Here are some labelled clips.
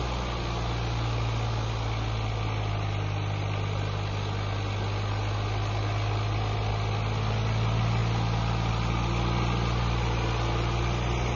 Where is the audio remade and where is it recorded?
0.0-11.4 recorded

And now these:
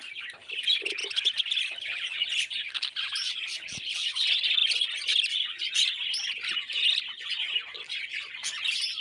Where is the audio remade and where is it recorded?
0.0-9.0 recorded

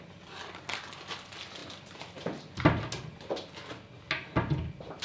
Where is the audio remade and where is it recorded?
0.0-1.6 recorded; 1.6-2.8 remade; 2.8-5.0 recorded

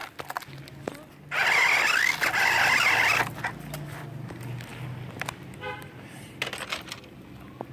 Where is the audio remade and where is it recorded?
0.0-7.7 recorded

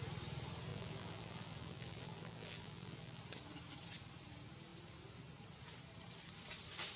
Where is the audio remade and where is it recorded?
0.0-0.7 recorded; 0.7-3.2 remade; 3.2-7.0 recorded

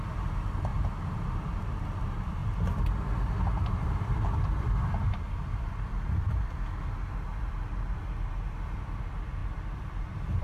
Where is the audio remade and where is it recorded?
0.0-0.7 remade; 0.7-1.6 recorded; 1.6-2.4 remade; 2.4-3.8 recorded; 3.8-10.4 remade

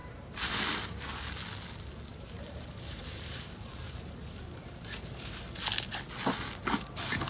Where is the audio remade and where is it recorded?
0.0-0.6 remade; 0.6-2.1 recorded; 2.1-5.4 remade; 5.4-7.3 recorded